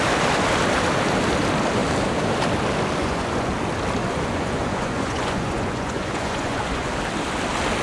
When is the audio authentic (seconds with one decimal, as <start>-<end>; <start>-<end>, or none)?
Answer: 0.0-3.0; 3.5-4.0; 6.9-7.8